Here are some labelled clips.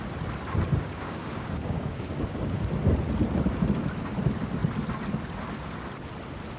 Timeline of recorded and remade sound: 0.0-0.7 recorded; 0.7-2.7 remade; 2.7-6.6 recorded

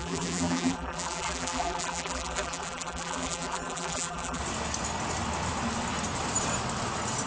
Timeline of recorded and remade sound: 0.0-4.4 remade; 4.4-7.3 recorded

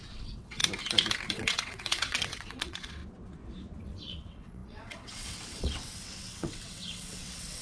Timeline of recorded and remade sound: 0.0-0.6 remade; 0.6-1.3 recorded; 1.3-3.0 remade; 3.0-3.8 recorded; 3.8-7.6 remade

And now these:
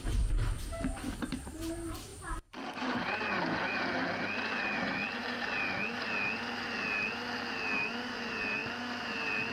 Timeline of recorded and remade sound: 0.0-9.5 recorded